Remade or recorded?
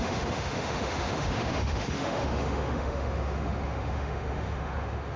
remade